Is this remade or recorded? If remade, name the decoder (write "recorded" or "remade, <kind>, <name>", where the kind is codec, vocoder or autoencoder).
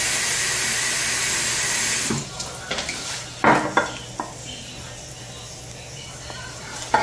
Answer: recorded